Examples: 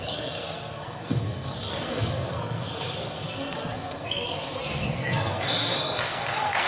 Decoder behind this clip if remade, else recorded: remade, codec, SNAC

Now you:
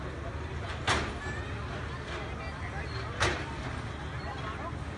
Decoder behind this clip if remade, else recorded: recorded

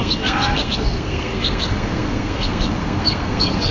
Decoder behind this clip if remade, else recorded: remade, codec, SNAC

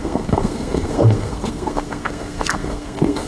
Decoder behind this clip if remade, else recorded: remade, codec, SNAC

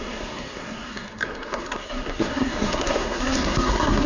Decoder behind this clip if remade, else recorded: remade, codec, SNAC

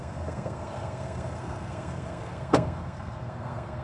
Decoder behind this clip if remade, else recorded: remade, codec, SNAC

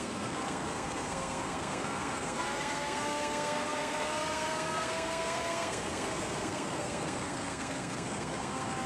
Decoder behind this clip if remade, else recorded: remade, codec, SNAC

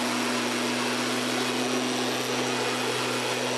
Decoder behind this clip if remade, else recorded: recorded